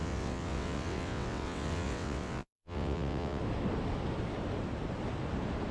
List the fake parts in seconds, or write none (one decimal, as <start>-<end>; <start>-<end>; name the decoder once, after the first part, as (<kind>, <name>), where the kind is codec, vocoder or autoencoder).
0.0-3.4 (vocoder, WaveNeXt)